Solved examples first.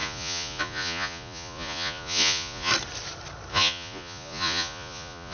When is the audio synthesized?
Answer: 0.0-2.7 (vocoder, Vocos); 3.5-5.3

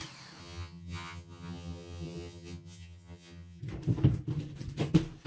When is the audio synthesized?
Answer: 0.4-3.6 (vocoder, HiFi-GAN)

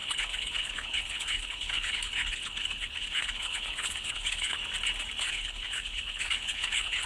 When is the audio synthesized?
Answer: 0.0-4.6 (codec, HILCodec); 5.3-7.1

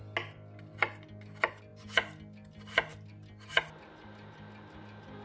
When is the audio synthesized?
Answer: none

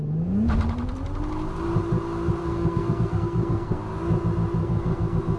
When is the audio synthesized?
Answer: 2.4-3.8 (codec, SNAC); 4.6-5.4

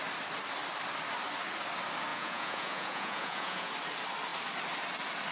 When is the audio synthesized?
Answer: 2.1-3.7 (vocoder, Vocos)

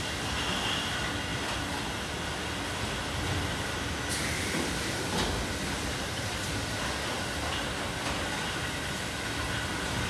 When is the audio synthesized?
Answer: none